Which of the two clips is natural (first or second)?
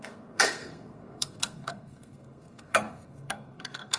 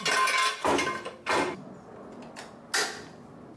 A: second